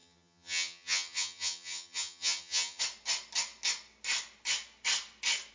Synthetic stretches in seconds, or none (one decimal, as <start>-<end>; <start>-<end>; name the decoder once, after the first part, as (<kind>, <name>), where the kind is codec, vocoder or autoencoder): 0.0-2.8 (vocoder, HiFi-GAN)